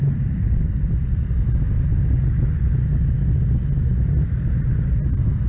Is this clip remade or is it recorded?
recorded